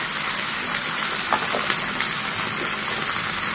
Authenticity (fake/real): real